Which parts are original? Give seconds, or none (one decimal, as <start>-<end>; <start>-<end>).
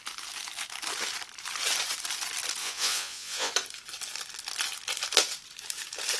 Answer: 0.0-2.6; 3.5-6.2